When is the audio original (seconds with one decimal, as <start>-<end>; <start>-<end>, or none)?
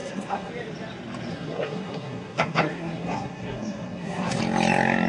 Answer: 0.5-1.3; 4.4-5.1